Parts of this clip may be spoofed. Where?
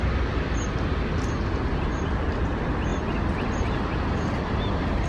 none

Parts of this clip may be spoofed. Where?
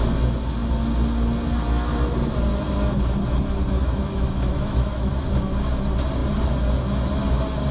3.8-5.1 (autoencoder, DAC-VAE)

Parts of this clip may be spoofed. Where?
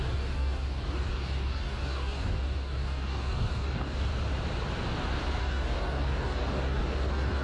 0.0-4.1 (codec, DAC); 5.4-7.4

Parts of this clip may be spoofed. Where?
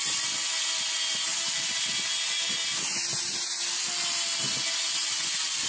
none